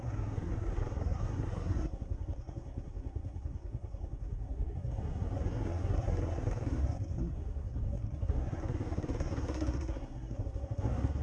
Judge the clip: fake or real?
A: fake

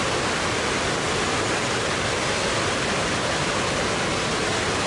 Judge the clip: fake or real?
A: real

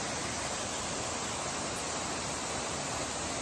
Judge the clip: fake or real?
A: real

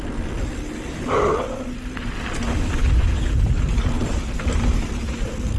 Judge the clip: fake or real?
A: real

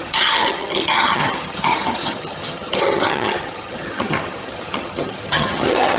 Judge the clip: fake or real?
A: fake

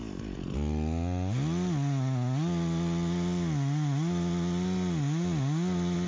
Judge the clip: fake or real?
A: real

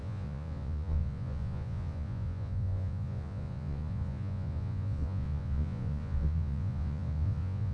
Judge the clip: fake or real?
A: fake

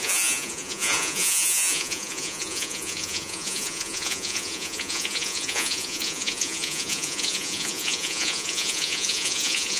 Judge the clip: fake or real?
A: fake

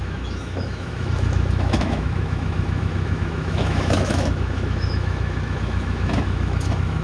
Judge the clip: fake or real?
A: fake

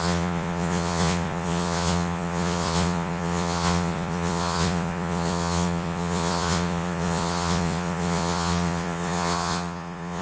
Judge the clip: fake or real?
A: fake